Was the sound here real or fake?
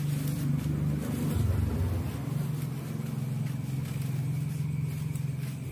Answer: real